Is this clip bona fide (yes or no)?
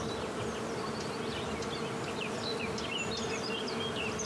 yes